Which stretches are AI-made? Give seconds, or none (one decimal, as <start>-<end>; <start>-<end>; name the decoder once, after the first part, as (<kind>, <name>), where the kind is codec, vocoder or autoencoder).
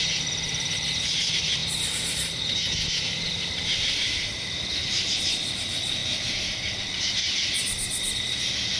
0.0-1.6 (vocoder, BigVGAN v2); 3.3-6.0; 6.8-7.2